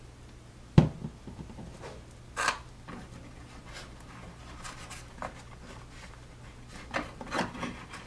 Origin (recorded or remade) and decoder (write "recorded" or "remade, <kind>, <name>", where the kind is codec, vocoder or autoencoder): recorded